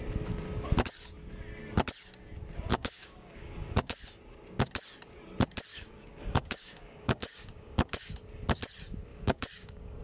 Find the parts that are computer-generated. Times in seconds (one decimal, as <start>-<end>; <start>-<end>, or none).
2.7-4.0; 5.7-8.1; 9.1-10.0